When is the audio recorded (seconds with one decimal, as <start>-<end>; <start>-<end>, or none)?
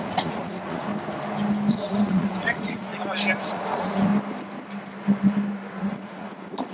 0.9-1.7; 2.9-3.4; 4.1-5.7